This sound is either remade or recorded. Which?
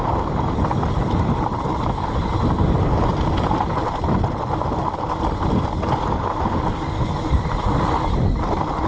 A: recorded